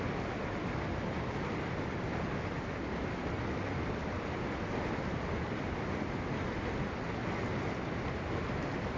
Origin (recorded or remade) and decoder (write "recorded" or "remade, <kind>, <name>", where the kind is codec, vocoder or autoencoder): recorded